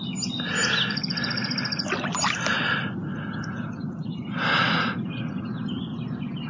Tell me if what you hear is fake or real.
real